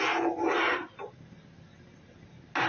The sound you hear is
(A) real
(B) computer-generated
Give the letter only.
A